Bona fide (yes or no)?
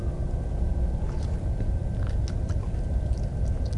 yes